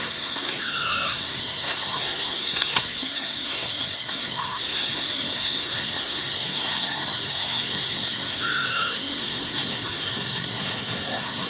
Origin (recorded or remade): remade